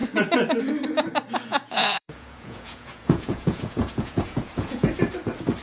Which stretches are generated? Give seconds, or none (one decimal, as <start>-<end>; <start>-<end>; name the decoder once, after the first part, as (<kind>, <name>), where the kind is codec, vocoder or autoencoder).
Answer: 1.5-4.9 (vocoder, Vocos)